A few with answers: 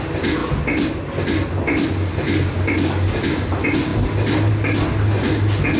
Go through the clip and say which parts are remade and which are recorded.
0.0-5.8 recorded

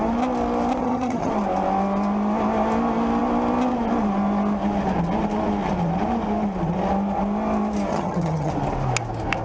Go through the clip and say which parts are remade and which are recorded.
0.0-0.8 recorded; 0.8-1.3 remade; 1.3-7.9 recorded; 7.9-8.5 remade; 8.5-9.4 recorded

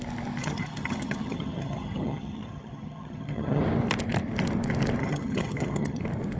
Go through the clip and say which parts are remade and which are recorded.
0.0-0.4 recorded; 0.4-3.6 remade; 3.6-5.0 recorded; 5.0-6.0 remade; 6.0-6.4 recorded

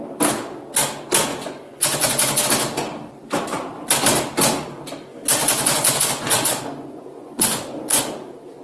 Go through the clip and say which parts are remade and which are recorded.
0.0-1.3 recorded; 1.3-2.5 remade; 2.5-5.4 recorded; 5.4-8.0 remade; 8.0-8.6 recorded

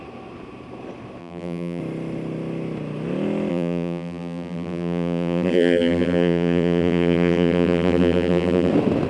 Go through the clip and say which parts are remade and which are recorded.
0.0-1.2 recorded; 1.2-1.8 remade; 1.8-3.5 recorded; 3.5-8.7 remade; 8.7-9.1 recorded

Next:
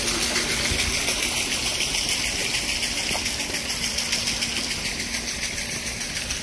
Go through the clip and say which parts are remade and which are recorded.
0.0-6.4 recorded

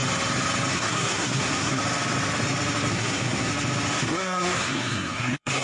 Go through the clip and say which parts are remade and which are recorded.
0.0-0.7 recorded; 0.7-1.8 remade; 1.8-2.9 recorded; 2.9-3.5 remade; 3.5-4.0 recorded; 4.0-5.6 remade